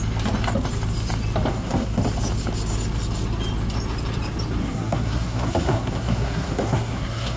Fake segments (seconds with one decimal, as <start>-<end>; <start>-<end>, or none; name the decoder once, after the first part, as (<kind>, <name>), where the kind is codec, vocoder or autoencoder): 1.5-2.0 (codec, SNAC); 4.6-7.4